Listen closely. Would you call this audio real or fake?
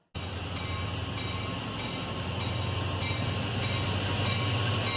real